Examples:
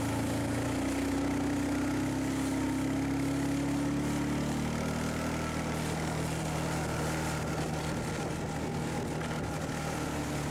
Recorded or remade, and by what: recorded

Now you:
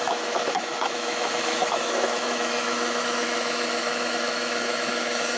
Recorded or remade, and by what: remade, autoencoder, DAC-VAE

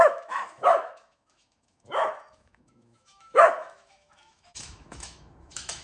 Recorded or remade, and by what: remade, autoencoder, DAC-VAE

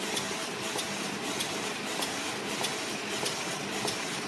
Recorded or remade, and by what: recorded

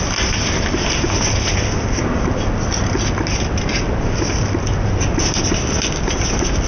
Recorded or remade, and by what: recorded